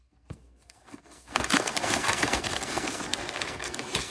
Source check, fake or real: fake